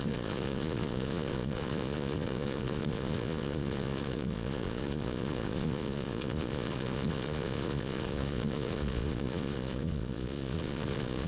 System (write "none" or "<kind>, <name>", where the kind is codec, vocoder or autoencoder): vocoder, Vocos